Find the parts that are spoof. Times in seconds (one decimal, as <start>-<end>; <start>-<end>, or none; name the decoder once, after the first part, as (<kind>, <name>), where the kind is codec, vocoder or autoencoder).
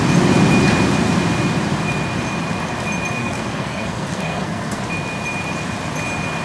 3.2-4.8 (codec, SNAC)